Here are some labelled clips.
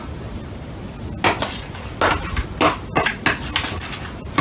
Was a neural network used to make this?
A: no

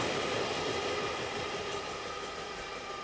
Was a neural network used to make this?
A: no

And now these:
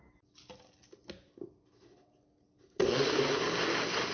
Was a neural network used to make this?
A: no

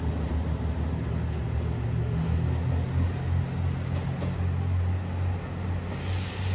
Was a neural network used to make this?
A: no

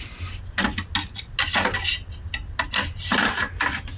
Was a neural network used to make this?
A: no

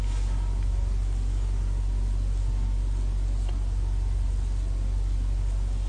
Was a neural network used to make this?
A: no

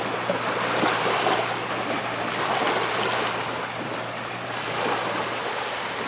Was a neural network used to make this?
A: no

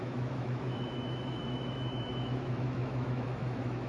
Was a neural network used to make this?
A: yes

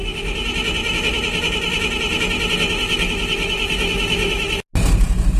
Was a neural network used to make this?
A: no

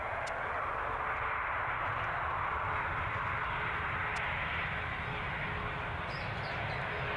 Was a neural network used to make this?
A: no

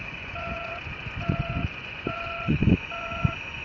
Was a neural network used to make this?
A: yes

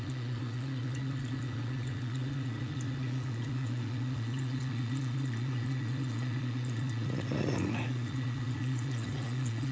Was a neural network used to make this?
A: yes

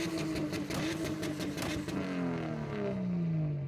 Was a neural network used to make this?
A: no